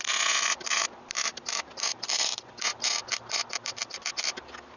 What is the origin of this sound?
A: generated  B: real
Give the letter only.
B